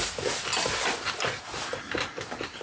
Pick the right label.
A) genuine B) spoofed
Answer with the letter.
A